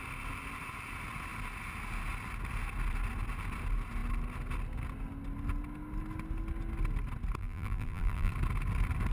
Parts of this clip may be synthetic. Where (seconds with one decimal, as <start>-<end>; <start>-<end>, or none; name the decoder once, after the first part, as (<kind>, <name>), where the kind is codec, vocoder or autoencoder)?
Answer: 7.4-8.3 (vocoder, BigVGAN v2)